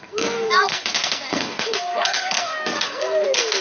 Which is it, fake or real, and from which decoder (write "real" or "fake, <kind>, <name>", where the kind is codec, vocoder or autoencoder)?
fake, codec, SNAC